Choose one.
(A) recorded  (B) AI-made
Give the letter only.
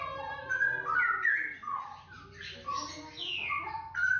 A